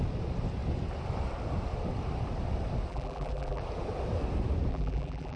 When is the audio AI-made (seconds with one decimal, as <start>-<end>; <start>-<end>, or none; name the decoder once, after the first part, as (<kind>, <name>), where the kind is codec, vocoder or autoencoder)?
2.9-3.6 (vocoder, BigVGAN v2); 4.7-5.4